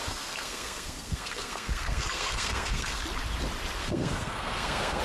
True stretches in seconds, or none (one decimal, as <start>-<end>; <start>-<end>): 3.0-3.8